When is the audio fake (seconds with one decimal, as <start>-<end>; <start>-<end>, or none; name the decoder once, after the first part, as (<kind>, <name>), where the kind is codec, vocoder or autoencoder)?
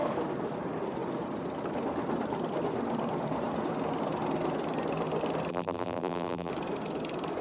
5.5-6.5 (vocoder, BigVGAN v2)